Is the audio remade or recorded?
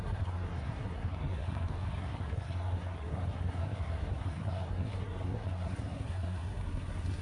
remade